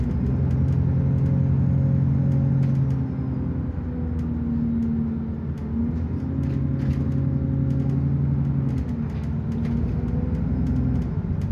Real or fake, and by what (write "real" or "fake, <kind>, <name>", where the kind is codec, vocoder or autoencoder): real